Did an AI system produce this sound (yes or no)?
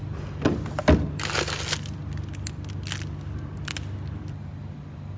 no